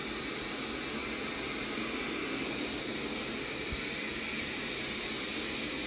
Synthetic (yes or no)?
no